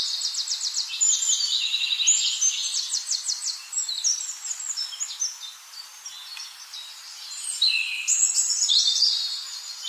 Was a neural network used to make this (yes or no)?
yes